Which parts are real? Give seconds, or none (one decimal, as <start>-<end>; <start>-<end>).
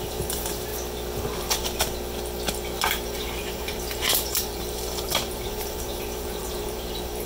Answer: 0.7-2.9